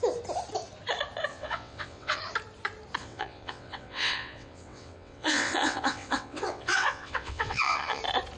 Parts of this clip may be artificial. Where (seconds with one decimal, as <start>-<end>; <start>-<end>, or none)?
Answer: 1.3-2.2; 3.0-8.0